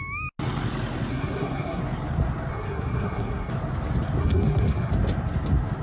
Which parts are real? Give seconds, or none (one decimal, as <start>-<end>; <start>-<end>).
0.0-1.1; 1.8-2.5; 3.5-4.2; 4.9-5.8